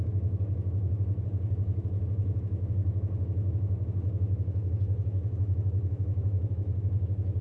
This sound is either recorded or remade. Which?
remade